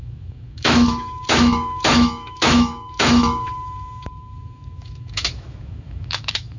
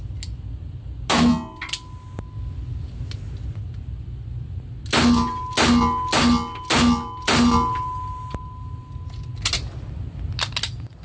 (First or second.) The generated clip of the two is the first